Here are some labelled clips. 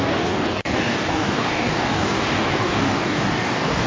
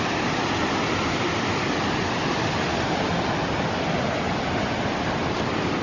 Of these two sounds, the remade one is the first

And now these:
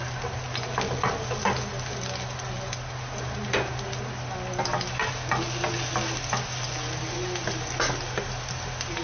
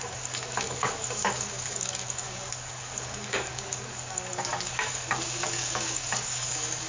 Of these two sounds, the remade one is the second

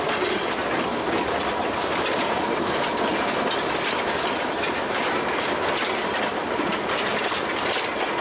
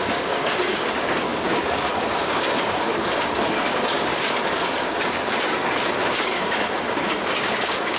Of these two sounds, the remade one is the second